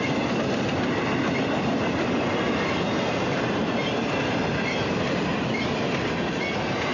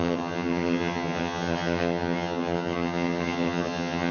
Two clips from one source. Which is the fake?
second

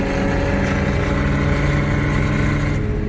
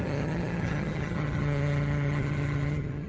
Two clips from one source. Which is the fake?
second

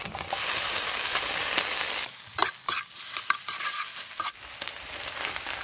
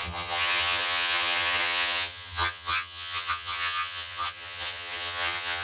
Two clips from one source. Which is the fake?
second